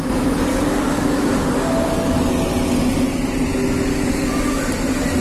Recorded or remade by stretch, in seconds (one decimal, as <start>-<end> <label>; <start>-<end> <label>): 0.0-0.5 recorded; 0.5-2.3 remade; 2.3-3.9 recorded; 3.9-4.6 remade; 4.6-5.2 recorded